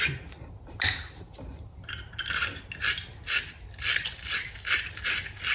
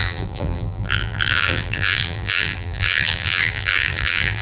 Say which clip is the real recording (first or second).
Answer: first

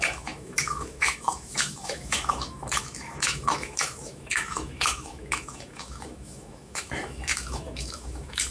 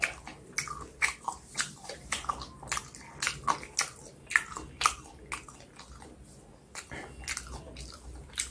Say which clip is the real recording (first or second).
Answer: second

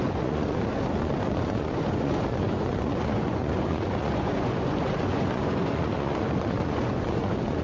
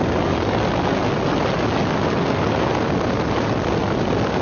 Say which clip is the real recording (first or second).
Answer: second